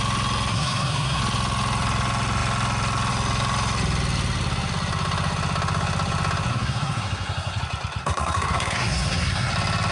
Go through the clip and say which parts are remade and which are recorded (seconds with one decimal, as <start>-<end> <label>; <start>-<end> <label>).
0.0-0.5 recorded; 0.5-1.2 remade; 1.2-6.5 recorded; 6.5-7.6 remade; 7.6-8.0 recorded; 8.0-9.5 remade; 9.5-9.9 recorded